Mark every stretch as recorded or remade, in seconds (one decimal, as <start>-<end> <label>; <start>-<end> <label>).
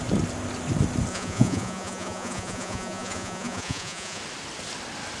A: 0.0-1.1 recorded; 1.1-4.2 remade; 4.2-5.2 recorded